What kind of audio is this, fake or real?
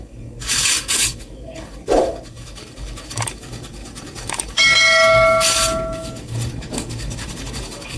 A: fake